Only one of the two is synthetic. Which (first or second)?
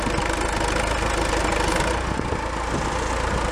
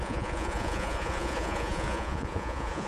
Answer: second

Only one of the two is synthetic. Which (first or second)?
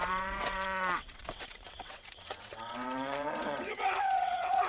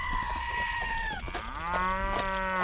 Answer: first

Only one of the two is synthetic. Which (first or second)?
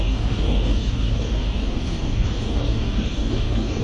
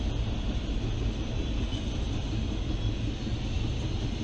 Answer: first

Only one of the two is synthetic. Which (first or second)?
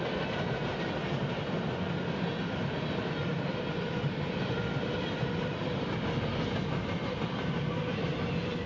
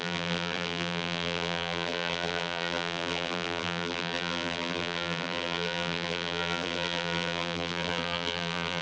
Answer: second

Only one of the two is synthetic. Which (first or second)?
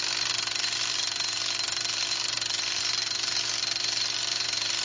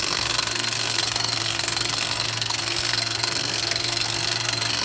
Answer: second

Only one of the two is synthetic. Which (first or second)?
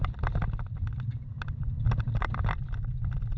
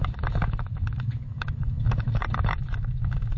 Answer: second